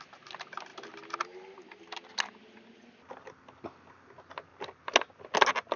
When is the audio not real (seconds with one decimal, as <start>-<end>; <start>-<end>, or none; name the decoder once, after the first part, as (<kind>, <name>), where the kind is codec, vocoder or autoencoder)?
none